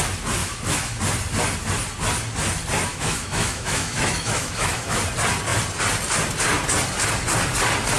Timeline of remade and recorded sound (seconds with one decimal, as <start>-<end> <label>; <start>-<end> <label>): 0.0-0.4 recorded; 0.4-1.0 remade; 1.0-2.9 recorded; 2.9-5.0 remade; 5.0-8.0 recorded